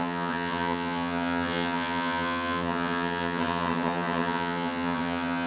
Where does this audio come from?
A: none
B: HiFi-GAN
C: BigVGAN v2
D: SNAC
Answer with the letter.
B